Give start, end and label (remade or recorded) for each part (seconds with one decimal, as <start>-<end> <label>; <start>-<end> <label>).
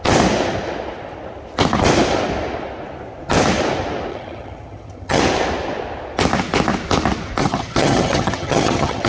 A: 0.0-4.1 recorded; 4.1-5.2 remade; 5.2-7.4 recorded; 7.4-9.1 remade